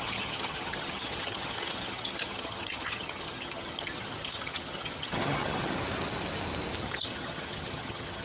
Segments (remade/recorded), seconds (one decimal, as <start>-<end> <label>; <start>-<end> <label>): 0.0-5.8 remade; 5.8-6.8 recorded; 6.8-8.2 remade